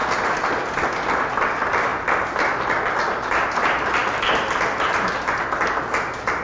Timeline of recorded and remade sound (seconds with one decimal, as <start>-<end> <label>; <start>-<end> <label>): 0.0-6.4 recorded